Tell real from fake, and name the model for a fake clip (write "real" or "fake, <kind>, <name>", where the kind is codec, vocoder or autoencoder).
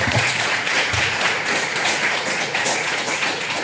fake, vocoder, Vocos